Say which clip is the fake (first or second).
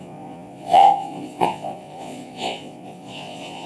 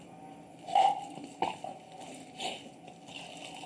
first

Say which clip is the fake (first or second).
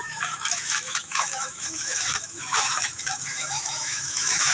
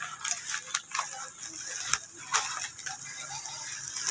first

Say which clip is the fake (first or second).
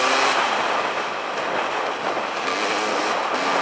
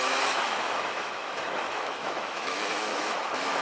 second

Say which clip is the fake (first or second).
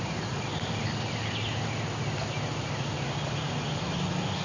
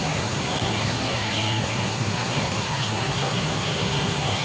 second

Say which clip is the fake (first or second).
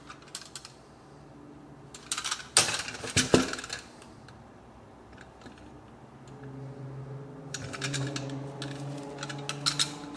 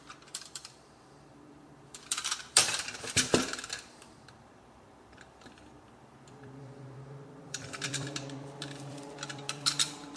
second